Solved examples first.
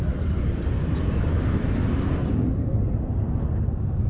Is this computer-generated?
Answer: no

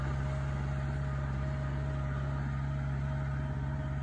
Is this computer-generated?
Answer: no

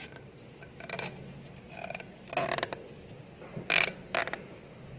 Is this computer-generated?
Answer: no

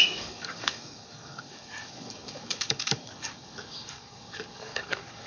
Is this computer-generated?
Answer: yes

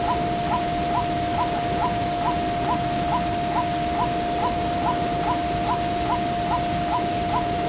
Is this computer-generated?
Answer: no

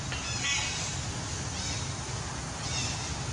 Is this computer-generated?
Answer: no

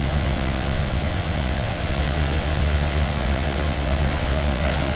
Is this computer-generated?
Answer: yes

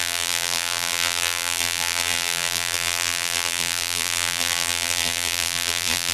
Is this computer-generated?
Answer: yes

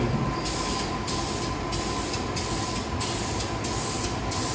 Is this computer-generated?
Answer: no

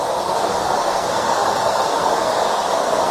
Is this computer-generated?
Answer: yes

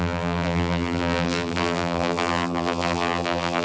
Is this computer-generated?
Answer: yes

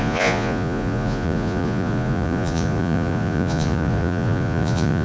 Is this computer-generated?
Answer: yes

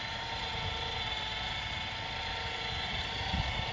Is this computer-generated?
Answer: no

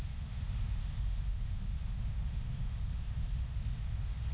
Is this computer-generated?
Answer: yes